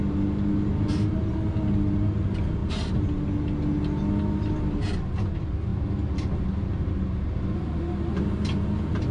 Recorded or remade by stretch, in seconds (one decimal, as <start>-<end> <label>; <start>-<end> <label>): 0.0-9.1 recorded